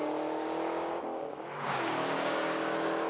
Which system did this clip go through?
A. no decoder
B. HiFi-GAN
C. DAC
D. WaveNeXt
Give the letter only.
C